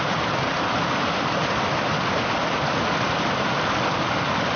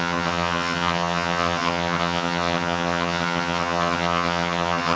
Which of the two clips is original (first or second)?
first